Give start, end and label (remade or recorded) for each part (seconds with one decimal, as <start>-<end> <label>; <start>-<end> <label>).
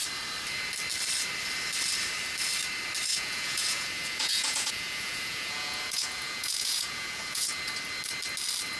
0.0-3.1 recorded; 3.1-7.6 remade; 7.6-8.8 recorded